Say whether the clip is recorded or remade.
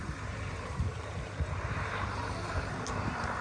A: remade